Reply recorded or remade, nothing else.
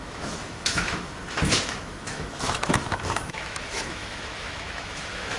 remade